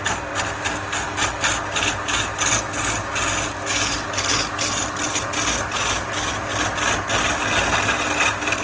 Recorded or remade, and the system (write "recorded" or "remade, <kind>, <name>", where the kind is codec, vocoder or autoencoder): recorded